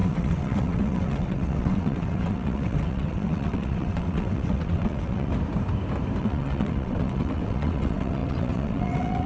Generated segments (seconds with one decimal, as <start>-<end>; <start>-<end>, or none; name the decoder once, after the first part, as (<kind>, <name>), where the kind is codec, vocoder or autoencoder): 0.0-5.3 (vocoder, WaveNeXt); 6.2-9.3